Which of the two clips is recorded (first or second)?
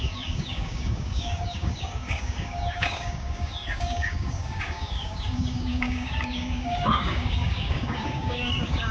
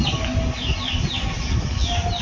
second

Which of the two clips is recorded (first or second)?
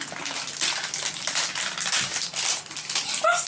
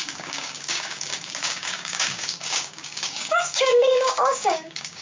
first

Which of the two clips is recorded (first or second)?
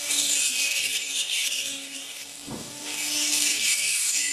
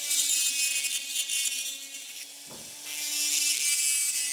second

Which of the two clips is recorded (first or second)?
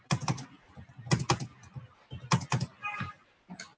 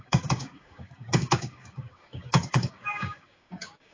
first